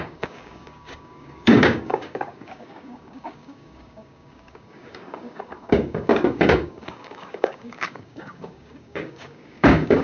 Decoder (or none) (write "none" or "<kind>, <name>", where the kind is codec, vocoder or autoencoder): codec, DAC